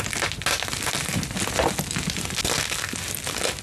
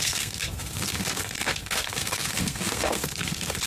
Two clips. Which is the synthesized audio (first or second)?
second